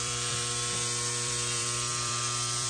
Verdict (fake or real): fake